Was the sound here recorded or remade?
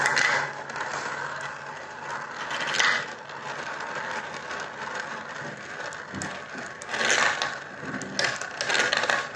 recorded